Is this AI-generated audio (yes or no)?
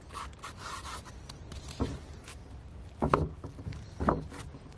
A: no